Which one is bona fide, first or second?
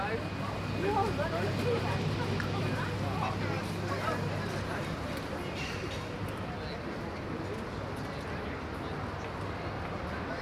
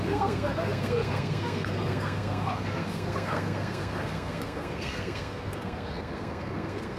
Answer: first